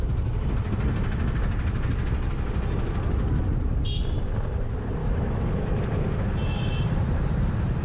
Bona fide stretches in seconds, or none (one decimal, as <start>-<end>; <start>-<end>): 0.0-5.0; 5.8-7.8